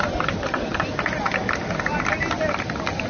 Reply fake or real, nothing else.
real